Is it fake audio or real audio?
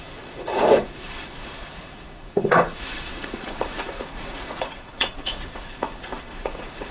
fake